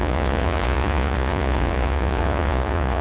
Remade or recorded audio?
remade